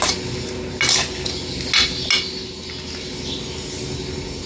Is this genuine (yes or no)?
yes